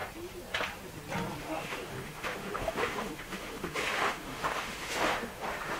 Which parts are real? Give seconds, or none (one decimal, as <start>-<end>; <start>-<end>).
0.0-1.4